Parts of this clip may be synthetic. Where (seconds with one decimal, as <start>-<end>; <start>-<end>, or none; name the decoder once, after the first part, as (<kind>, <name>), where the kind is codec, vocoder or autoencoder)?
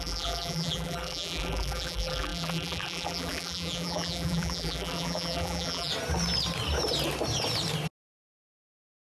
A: 0.0-5.9 (vocoder, BigVGAN v2)